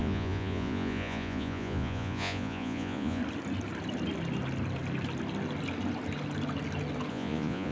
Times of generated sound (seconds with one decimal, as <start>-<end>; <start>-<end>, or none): 0.0-3.2; 7.1-7.7